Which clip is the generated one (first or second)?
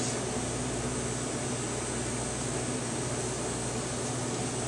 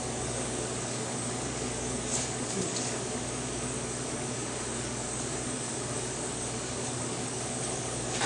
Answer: second